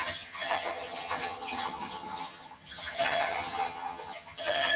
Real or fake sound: fake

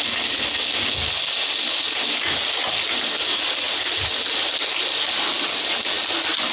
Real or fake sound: real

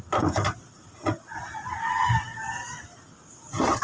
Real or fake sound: real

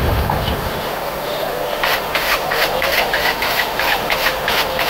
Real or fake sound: fake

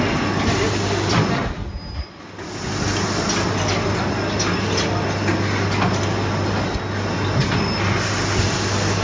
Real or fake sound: real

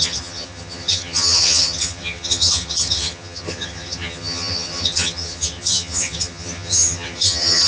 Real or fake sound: fake